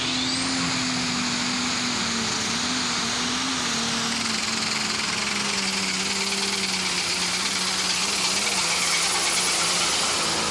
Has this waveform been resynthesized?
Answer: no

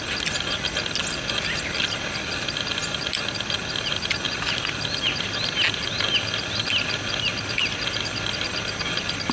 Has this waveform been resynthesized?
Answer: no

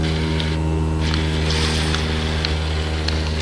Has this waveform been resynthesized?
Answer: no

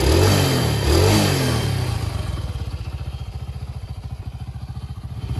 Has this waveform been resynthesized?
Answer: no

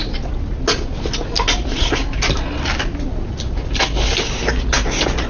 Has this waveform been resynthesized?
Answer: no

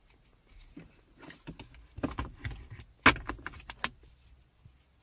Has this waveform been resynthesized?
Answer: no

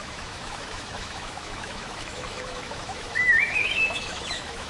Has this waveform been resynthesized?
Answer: yes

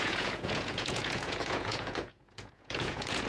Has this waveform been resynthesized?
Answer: yes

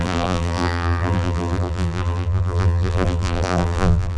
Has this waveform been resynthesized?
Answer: yes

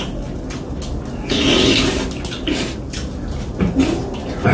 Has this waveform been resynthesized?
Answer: no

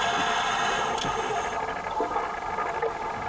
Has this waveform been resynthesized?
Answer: no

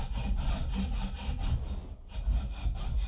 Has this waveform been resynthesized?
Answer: no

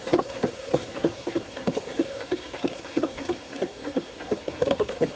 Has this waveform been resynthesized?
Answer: yes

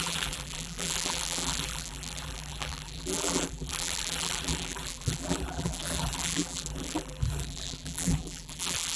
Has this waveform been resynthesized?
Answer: yes